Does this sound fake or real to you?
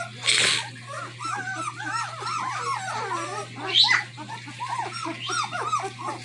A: real